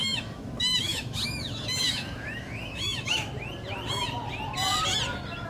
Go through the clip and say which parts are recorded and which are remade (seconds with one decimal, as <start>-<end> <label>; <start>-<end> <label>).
0.0-3.3 remade; 3.3-5.5 recorded